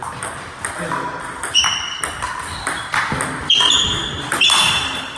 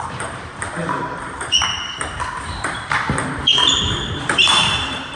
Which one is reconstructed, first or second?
second